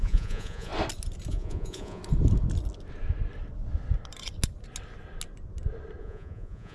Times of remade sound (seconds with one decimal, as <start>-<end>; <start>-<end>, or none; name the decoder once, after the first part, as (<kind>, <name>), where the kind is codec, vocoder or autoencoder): 0.0-0.7 (vocoder, Vocos); 1.3-2.0; 6.0-6.7